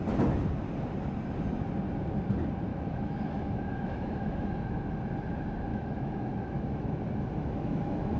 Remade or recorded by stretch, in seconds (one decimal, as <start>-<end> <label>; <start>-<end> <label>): 0.0-2.7 recorded; 2.7-4.5 remade; 4.5-5.7 recorded; 5.7-6.9 remade; 6.9-7.4 recorded; 7.4-8.2 remade